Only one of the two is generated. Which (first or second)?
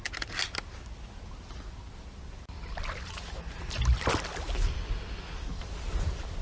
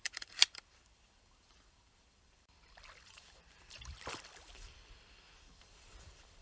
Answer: second